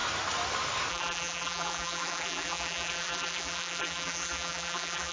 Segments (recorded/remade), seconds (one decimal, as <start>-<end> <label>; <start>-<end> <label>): 0.0-0.9 recorded; 0.9-5.1 remade

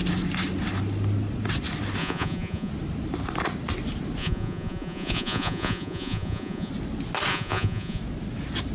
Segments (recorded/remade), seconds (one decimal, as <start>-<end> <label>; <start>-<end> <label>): 0.0-2.0 recorded; 2.0-2.7 remade; 2.7-4.2 recorded; 4.2-6.7 remade; 6.7-7.3 recorded; 7.3-8.0 remade; 8.0-8.7 recorded

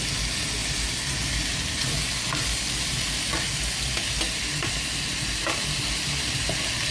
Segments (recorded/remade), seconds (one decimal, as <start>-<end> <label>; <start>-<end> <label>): 0.0-6.9 recorded